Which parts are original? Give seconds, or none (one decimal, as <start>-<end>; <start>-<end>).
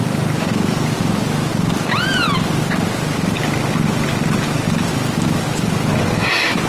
0.0-6.7